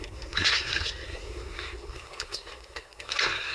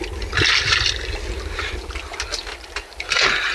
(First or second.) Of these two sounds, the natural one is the second